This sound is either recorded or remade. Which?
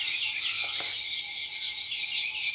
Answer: recorded